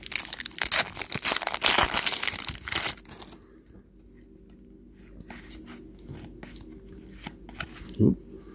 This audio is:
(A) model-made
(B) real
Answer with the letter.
B